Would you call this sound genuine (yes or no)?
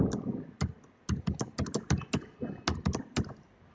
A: yes